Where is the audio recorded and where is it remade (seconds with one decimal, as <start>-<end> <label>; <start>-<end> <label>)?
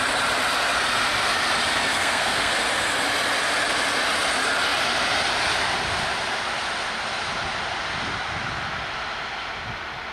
0.0-1.9 recorded; 1.9-2.5 remade; 2.5-10.1 recorded